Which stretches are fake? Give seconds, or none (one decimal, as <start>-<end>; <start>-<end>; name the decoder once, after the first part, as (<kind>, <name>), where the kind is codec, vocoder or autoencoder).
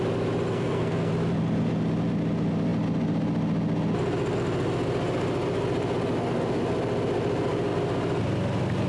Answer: 0.5-1.1 (codec, SNAC)